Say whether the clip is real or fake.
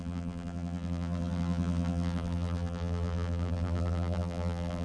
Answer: fake